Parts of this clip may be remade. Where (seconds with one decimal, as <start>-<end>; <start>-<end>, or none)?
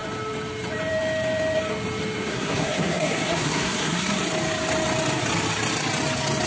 2.3-4.2